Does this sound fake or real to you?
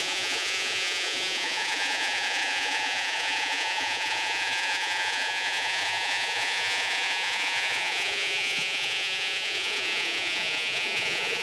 fake